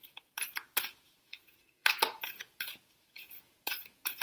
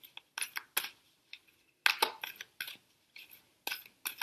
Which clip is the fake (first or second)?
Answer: first